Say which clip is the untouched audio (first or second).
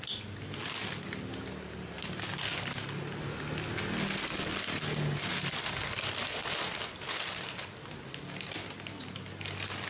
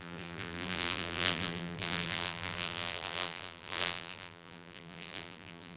first